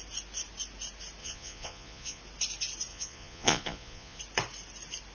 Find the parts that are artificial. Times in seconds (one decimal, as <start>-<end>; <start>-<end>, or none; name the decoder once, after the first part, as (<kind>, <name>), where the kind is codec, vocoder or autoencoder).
1.2-2.2 (vocoder, Vocos); 2.9-4.2